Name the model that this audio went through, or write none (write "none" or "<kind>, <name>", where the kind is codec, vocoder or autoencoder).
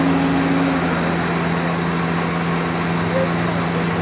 none